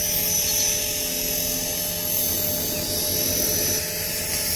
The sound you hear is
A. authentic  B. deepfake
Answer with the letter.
A